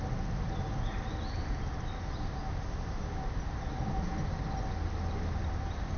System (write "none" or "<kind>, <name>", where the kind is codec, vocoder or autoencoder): none